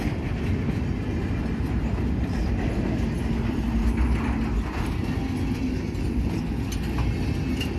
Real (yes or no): yes